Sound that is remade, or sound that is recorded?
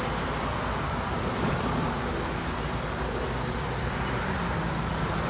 recorded